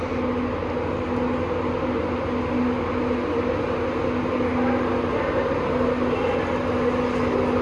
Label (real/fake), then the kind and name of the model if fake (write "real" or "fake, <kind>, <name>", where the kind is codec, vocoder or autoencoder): real